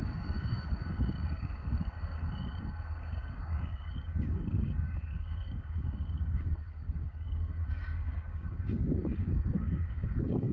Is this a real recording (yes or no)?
no